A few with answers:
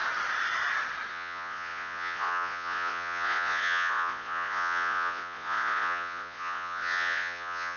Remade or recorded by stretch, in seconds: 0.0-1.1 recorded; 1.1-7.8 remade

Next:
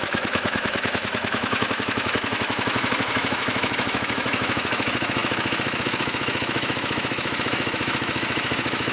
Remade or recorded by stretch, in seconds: 0.0-8.9 remade

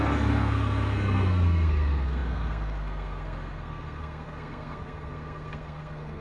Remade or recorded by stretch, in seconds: 0.0-6.2 remade

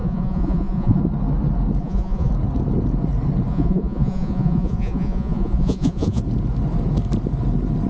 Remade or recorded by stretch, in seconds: 0.0-1.0 remade; 1.0-1.8 recorded; 1.8-2.3 remade; 2.3-3.5 recorded; 3.5-6.2 remade; 6.2-7.9 recorded

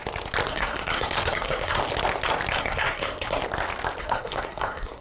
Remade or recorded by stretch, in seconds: 0.0-0.5 recorded; 0.5-1.8 remade; 1.8-2.6 recorded; 2.6-3.4 remade; 3.4-4.0 recorded; 4.0-5.0 remade

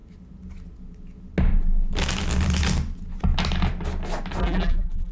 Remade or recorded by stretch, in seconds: 0.0-4.4 recorded; 4.4-5.1 remade